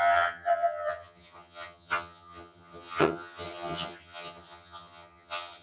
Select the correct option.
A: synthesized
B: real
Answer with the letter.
A